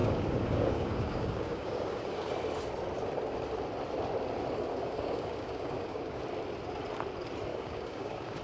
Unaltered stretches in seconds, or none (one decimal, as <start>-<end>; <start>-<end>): 2.3-4.7; 6.2-7.5